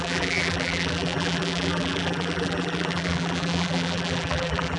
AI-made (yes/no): yes